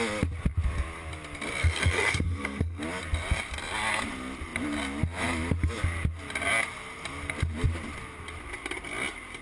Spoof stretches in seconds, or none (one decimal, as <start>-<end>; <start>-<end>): 1.6-2.8